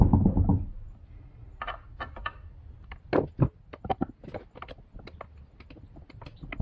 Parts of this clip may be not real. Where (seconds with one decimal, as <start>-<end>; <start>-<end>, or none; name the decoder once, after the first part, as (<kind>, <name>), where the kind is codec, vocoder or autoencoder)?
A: none